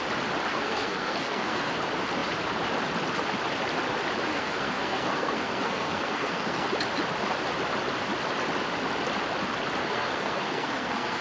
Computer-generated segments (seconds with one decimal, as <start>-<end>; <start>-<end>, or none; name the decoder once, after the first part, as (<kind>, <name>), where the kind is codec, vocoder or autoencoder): 0.5-1.8 (codec, SNAC); 4.3-6.7; 9.8-11.2

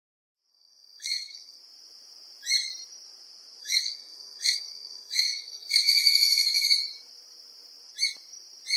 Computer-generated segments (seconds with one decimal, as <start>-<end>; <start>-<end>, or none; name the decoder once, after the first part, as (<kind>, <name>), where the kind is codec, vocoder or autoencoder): 0.5-1.6 (codec, SNAC); 3.6-6.7